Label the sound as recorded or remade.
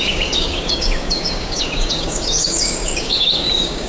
remade